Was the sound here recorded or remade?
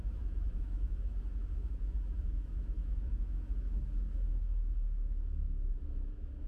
remade